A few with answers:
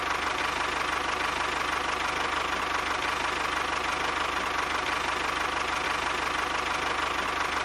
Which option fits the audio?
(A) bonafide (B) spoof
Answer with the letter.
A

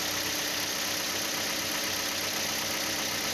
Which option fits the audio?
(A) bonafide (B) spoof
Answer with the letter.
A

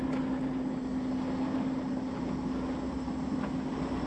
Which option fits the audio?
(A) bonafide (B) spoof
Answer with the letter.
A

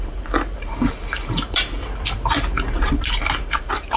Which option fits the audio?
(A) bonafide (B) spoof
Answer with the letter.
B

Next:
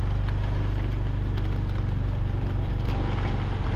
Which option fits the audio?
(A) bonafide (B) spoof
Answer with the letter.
A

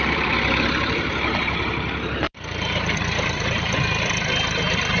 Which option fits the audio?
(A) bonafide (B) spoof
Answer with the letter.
B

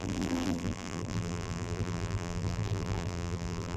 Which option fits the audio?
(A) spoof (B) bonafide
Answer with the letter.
A